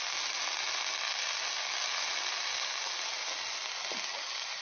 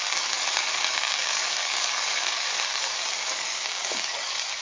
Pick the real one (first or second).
first